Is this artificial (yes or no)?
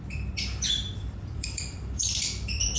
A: yes